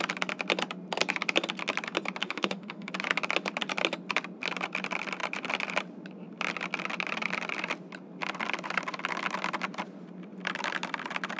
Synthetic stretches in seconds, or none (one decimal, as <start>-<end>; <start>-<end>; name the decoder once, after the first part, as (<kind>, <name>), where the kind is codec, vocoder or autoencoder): 2.2-2.9 (autoencoder, DAC-VAE)